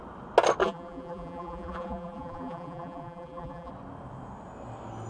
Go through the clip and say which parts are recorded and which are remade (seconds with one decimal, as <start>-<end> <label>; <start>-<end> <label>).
0.0-0.6 recorded; 0.6-3.7 remade; 3.7-5.1 recorded